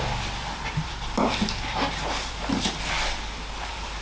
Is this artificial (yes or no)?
yes